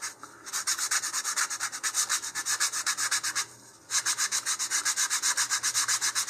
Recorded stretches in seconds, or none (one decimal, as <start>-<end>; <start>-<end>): 0.0-6.3